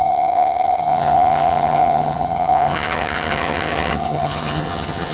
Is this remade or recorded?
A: remade